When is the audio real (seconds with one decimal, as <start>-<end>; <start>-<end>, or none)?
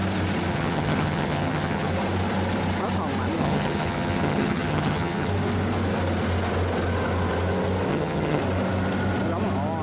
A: 0.0-0.5; 1.9-3.4; 5.3-7.9; 8.4-9.8